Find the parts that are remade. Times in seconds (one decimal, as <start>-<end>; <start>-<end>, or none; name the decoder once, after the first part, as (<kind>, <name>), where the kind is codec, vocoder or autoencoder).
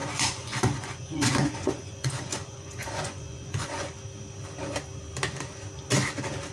0.0-3.9 (vocoder, Vocos)